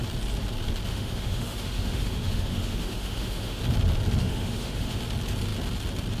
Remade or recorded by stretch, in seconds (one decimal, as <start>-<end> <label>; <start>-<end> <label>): 0.0-0.9 recorded; 0.9-3.6 remade; 3.6-4.2 recorded; 4.2-5.0 remade; 5.0-6.2 recorded